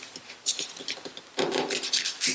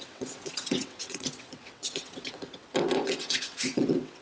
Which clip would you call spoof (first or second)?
second